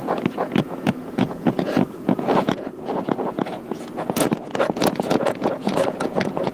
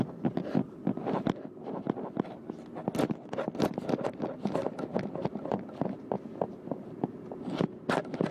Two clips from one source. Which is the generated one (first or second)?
first